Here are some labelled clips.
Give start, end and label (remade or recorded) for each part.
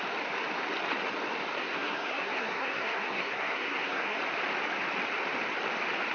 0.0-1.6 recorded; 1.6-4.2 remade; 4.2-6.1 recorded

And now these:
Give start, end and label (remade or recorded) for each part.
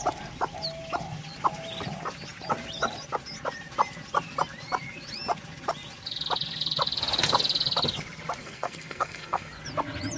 0.0-8.4 recorded; 8.4-9.5 remade; 9.5-10.2 recorded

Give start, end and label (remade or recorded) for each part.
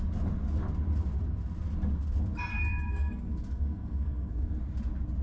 0.0-2.5 recorded; 2.5-4.6 remade; 4.6-5.2 recorded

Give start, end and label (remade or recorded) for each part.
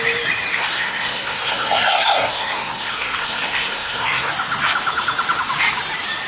0.0-0.5 recorded; 0.5-4.3 remade; 4.3-6.3 recorded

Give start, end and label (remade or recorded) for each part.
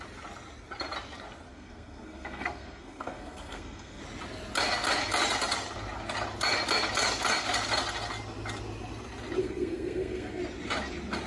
0.0-1.5 recorded; 1.5-4.0 remade; 4.0-9.4 recorded; 9.4-10.4 remade; 10.4-11.3 recorded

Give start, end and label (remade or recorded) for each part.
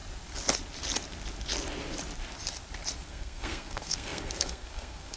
0.0-3.1 recorded; 3.1-5.2 remade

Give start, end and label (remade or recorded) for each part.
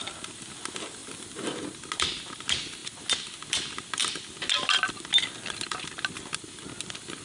0.0-7.2 recorded